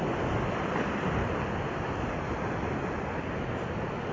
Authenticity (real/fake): real